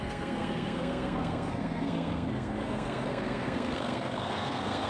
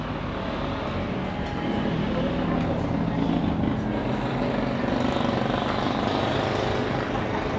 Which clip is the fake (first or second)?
first